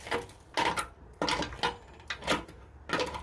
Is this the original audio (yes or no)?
yes